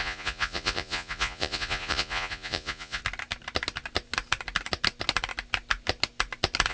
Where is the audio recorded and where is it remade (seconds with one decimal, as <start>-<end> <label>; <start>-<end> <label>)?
0.0-3.0 remade; 3.0-6.7 recorded